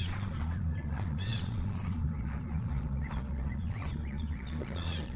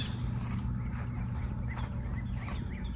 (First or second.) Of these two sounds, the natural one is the second